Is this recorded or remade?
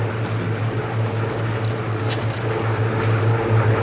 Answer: recorded